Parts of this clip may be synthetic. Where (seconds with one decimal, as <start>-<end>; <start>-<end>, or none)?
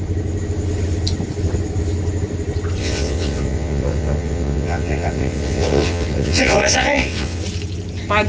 2.8-7.4